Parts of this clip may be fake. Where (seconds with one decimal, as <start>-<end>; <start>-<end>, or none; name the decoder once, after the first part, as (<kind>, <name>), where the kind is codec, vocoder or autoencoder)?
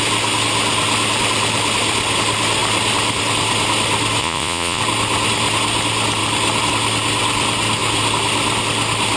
4.2-4.8 (vocoder, Vocos)